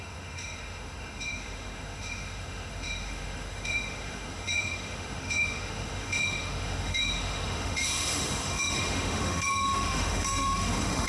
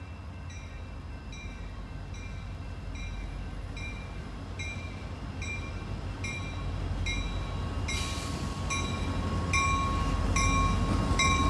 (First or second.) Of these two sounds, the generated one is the first